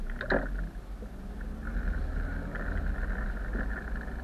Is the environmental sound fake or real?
real